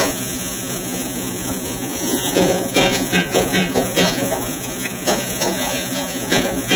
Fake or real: fake